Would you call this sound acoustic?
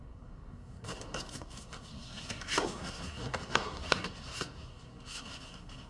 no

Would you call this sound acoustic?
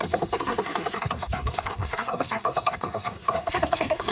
no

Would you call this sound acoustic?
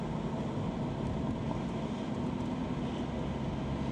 yes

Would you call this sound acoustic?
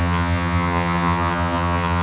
no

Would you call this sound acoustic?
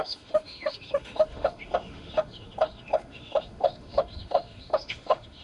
no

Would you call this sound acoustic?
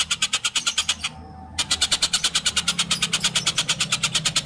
yes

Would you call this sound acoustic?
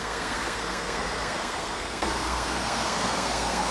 no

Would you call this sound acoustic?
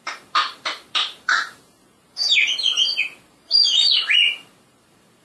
no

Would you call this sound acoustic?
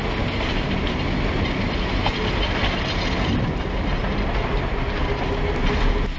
yes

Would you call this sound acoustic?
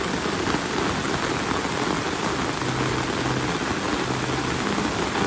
yes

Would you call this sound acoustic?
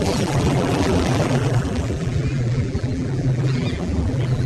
no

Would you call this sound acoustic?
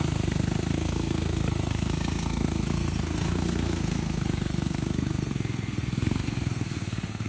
no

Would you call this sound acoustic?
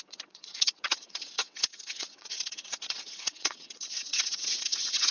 no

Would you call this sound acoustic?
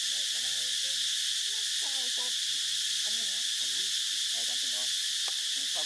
yes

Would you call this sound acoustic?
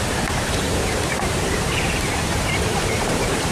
no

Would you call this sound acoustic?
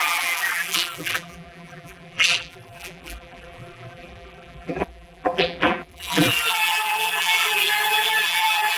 no